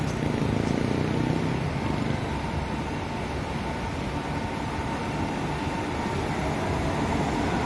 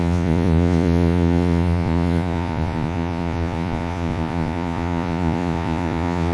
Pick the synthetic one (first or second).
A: second